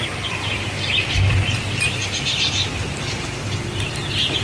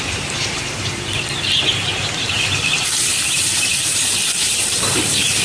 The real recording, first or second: first